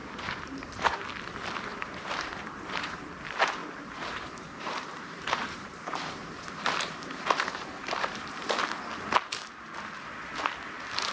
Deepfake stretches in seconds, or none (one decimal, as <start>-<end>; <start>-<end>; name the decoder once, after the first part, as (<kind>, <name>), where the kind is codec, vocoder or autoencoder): 0.0-1.1 (vocoder, BigVGAN v2); 1.7-3.1; 3.6-8.5